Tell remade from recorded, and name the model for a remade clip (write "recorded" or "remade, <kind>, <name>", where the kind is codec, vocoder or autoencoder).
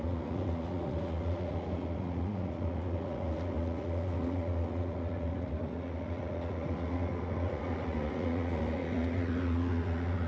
remade, vocoder, Vocos